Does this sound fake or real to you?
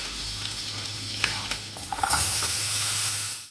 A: fake